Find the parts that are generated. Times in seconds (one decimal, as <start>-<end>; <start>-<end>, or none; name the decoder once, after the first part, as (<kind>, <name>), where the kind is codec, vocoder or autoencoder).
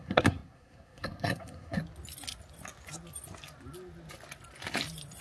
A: 0.0-1.8 (codec, SNAC)